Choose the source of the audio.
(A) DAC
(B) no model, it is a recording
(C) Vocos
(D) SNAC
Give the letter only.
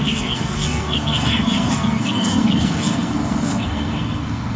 D